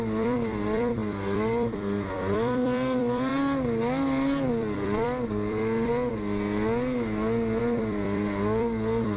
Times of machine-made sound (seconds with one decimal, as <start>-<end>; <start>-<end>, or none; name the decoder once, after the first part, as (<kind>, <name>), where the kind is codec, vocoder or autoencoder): 0.0-3.3 (vocoder, BigVGAN v2); 4.5-6.1; 7.6-9.2